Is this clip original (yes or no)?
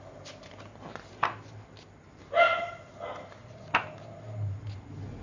yes